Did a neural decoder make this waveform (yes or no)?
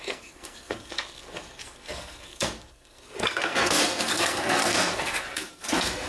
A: yes